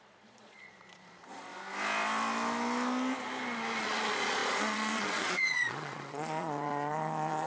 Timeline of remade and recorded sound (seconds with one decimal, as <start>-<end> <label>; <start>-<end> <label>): 0.0-1.5 remade; 1.5-3.8 recorded; 3.8-7.5 remade